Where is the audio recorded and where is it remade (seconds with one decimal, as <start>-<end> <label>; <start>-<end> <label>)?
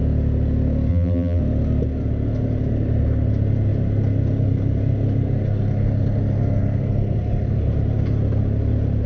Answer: 0.0-0.9 recorded; 0.9-1.4 remade; 1.4-9.1 recorded